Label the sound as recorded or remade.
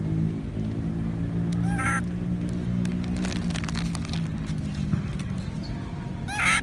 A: recorded